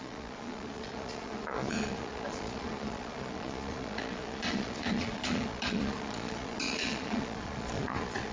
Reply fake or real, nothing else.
fake